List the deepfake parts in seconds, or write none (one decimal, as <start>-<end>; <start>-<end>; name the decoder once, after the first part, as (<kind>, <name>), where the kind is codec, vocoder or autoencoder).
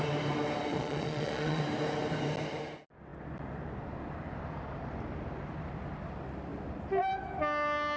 0.7-1.6 (vocoder, Vocos)